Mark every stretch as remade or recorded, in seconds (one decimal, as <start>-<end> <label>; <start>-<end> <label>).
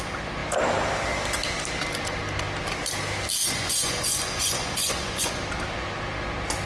0.0-3.4 recorded; 3.4-5.4 remade; 5.4-6.7 recorded